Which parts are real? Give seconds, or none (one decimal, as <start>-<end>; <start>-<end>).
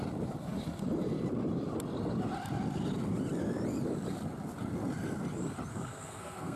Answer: 0.0-5.7